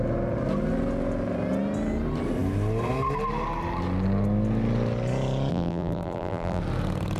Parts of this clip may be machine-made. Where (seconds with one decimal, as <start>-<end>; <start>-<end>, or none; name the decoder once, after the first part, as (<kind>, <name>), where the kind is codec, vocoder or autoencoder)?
5.5-6.6 (vocoder, BigVGAN v2)